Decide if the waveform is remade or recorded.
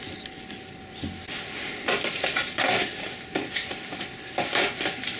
recorded